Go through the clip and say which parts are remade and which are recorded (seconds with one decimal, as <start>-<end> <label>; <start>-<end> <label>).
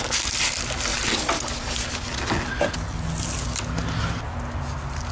0.0-5.1 recorded